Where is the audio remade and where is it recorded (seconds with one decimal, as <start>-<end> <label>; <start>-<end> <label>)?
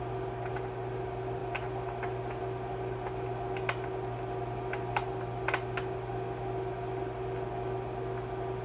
0.0-8.6 recorded